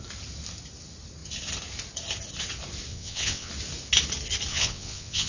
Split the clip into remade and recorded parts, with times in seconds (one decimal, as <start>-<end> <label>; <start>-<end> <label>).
0.0-2.9 recorded; 2.9-3.5 remade; 3.5-4.5 recorded; 4.5-5.3 remade